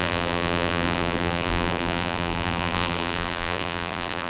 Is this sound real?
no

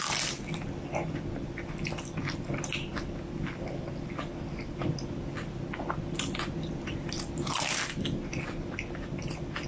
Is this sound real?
yes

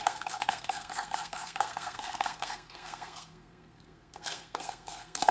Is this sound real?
no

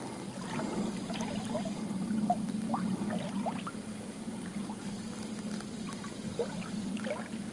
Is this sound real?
yes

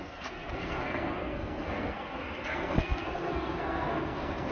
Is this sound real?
no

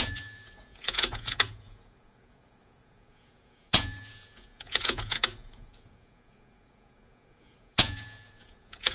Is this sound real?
no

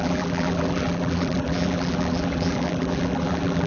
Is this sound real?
no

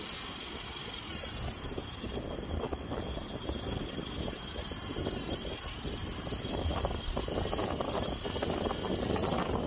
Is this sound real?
yes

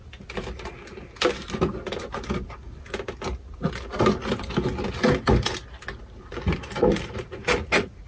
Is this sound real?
yes